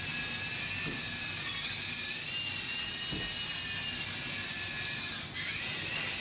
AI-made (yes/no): no